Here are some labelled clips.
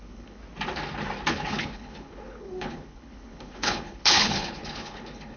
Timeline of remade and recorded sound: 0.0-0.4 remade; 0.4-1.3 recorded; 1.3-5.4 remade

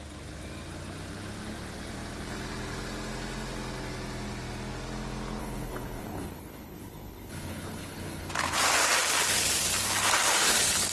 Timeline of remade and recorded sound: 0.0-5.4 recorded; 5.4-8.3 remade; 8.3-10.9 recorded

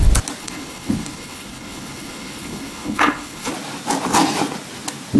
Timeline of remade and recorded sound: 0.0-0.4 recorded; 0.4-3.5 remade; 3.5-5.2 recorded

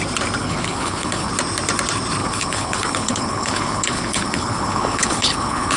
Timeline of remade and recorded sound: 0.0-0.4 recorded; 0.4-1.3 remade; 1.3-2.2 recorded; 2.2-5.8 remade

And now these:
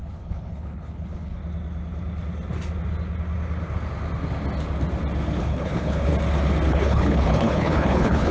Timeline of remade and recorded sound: 0.0-1.4 remade; 1.4-5.4 recorded; 5.4-6.1 remade; 6.1-6.7 recorded; 6.7-8.3 remade